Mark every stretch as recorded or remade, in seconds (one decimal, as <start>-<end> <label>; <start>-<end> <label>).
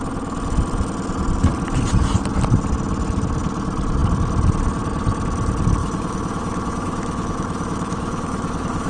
0.0-5.8 recorded; 5.8-8.9 remade